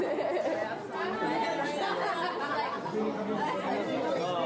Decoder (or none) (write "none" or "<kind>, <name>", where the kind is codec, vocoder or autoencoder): none